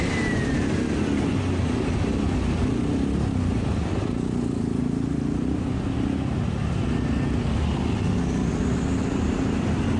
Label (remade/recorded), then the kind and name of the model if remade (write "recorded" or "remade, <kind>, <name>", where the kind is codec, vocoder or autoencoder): recorded